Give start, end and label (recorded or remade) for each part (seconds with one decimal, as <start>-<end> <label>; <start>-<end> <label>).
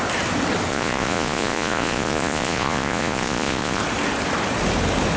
0.0-0.7 recorded; 0.7-3.8 remade; 3.8-5.2 recorded